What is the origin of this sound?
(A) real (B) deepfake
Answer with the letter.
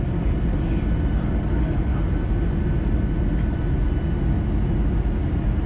A